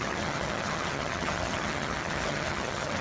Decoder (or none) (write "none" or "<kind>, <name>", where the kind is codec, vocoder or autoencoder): vocoder, HiFi-GAN